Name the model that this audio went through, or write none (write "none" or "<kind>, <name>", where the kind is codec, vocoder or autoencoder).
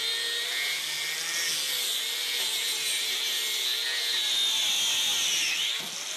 none